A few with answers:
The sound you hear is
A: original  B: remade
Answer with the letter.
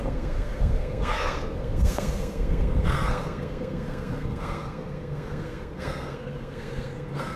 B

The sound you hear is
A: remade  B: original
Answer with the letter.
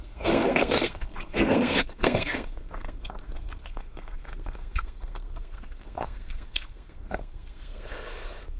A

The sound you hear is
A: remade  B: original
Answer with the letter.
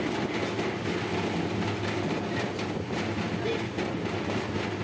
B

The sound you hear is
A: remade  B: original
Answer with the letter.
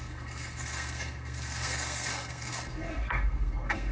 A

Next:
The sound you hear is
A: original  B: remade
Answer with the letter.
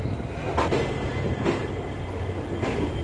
A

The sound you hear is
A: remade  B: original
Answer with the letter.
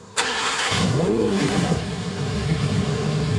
A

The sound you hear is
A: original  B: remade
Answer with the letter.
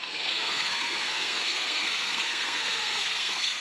B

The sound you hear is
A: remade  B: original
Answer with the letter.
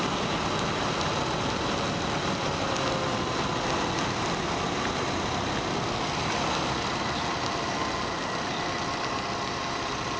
B